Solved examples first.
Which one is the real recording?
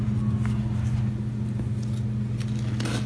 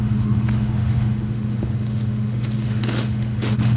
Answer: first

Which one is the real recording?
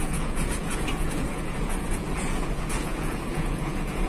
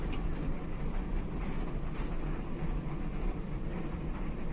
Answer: second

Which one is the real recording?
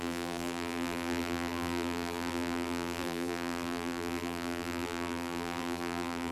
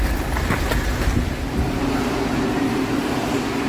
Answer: second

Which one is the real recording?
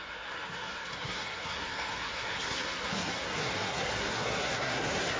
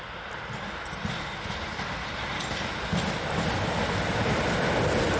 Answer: second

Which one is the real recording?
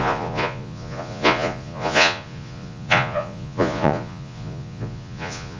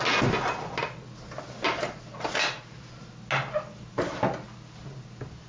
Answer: second